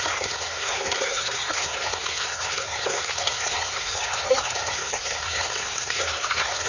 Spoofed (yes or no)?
yes